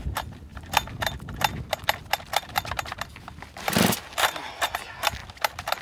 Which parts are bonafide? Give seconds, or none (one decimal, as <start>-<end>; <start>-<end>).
0.0-0.5; 4.0-5.8